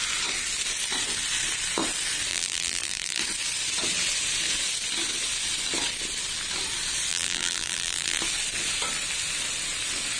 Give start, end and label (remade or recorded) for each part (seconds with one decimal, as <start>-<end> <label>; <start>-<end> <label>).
0.0-2.3 recorded; 2.3-3.2 remade; 3.2-7.1 recorded; 7.1-8.2 remade; 8.2-10.2 recorded